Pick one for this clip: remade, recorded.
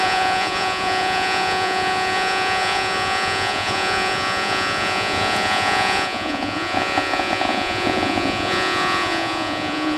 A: remade